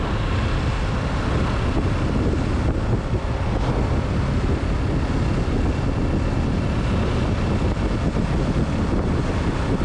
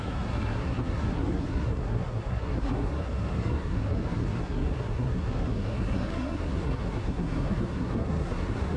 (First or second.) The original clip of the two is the first